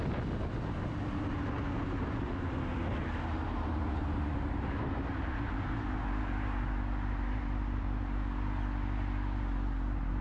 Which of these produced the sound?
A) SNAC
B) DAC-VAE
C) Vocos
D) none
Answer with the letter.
D